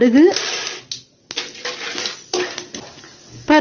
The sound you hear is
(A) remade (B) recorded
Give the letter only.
B